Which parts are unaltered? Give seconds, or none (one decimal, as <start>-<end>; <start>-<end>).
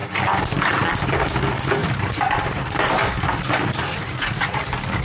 0.0-1.8